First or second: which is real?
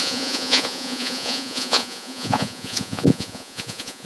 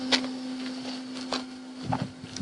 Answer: second